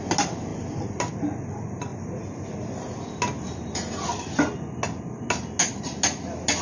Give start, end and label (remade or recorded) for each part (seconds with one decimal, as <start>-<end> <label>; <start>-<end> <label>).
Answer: 0.0-6.6 recorded